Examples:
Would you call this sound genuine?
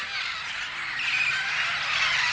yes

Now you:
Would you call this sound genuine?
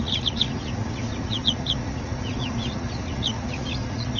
no